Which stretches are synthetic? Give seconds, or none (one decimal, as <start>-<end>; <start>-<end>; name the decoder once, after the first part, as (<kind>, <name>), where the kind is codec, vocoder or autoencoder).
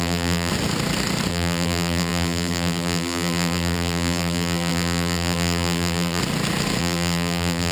0.0-0.5 (vocoder, BigVGAN v2); 1.3-6.2; 6.8-7.7